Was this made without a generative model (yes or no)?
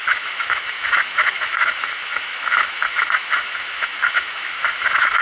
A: no